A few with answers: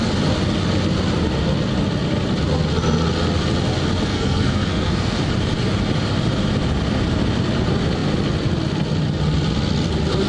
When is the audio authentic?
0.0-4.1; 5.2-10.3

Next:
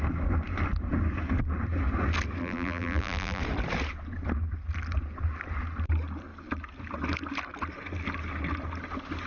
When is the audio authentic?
0.0-2.4; 3.4-9.3

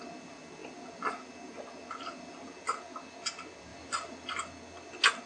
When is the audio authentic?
0.0-5.3

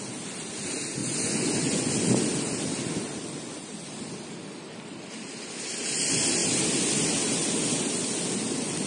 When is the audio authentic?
0.0-1.0; 1.9-8.9

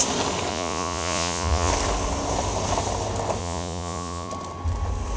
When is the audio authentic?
0.0-0.5; 1.7-3.4; 4.3-5.2

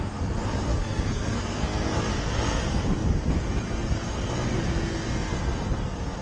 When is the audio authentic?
0.0-0.7; 2.0-6.2

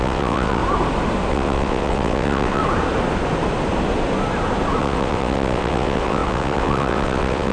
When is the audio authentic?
0.6-1.3; 2.6-4.8